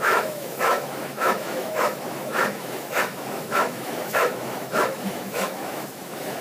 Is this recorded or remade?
remade